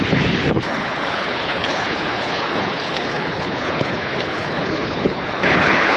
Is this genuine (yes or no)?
no